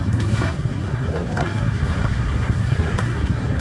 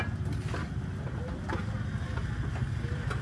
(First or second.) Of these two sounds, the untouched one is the second